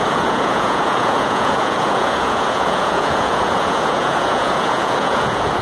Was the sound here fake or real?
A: fake